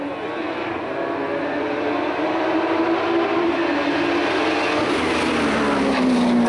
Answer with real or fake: real